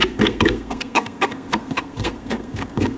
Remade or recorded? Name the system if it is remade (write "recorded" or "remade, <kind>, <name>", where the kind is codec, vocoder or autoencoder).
remade, codec, SNAC